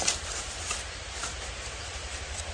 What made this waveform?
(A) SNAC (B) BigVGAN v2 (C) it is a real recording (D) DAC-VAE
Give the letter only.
B